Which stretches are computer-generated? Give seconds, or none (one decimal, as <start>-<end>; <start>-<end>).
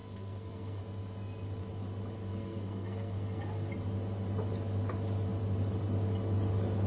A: 0.0-0.8; 2.3-3.7